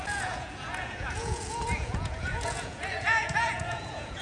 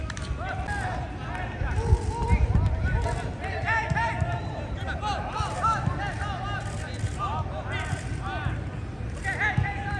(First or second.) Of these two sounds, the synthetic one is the first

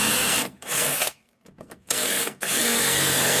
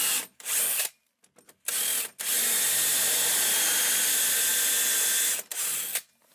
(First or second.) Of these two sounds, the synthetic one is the first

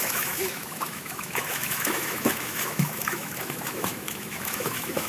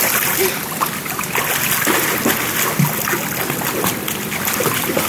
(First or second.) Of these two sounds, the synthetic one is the first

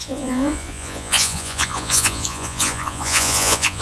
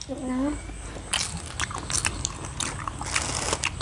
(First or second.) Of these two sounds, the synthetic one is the first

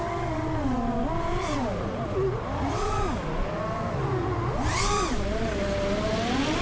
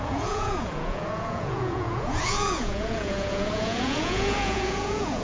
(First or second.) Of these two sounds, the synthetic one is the second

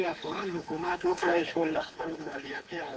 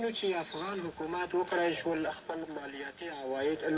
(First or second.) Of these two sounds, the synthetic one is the first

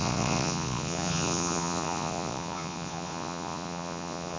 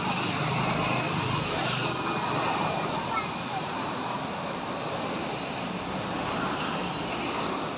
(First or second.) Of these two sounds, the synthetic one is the first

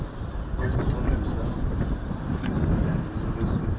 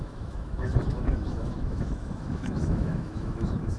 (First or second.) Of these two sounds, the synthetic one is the second